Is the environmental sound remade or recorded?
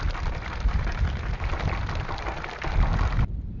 recorded